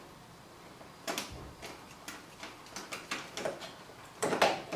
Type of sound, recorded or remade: recorded